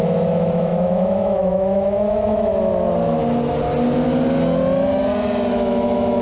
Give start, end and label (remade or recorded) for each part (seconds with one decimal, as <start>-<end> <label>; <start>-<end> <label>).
0.0-2.7 remade; 2.7-5.5 recorded; 5.5-6.2 remade